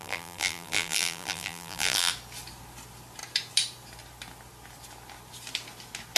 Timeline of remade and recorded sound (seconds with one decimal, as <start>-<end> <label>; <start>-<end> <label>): 0.0-2.1 remade; 2.1-6.2 recorded